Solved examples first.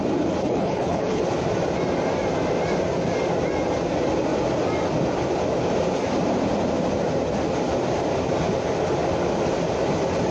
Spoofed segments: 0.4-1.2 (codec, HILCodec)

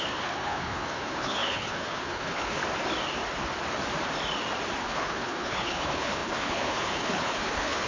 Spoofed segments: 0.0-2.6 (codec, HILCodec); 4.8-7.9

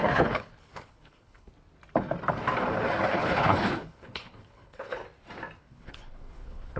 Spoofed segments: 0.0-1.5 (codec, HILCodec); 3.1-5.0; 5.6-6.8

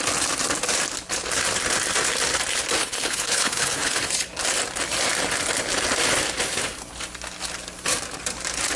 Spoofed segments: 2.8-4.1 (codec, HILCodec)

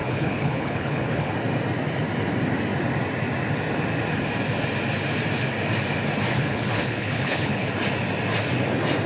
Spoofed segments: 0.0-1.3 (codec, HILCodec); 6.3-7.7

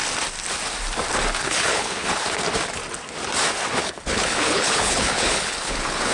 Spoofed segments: 1.4-2.2 (codec, HILCodec); 3.8-6.1

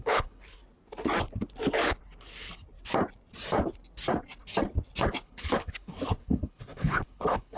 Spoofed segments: 0.0-0.6 (codec, HILCodec); 5.2-7.6

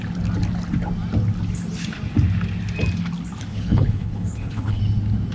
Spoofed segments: 3.5-4.8 (codec, HILCodec)